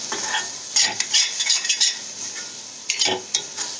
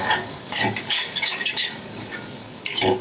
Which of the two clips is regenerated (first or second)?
second